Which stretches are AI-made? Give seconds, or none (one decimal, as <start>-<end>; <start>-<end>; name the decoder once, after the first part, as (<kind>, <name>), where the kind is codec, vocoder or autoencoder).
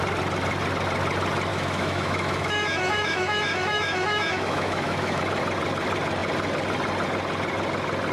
1.5-5.2 (autoencoder, DAC-VAE)